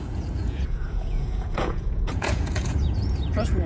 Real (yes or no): no